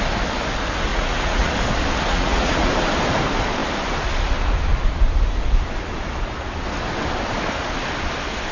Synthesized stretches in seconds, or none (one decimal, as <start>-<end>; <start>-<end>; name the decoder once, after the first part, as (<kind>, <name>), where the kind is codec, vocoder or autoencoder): 0.9-1.5 (vocoder, Vocos); 2.1-2.7